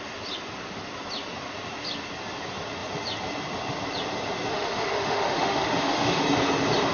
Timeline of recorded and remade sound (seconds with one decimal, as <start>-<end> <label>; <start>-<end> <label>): 0.0-4.5 recorded; 4.5-6.2 remade; 6.2-6.9 recorded